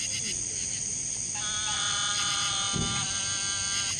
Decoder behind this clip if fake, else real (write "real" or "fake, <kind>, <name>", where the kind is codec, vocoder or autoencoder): real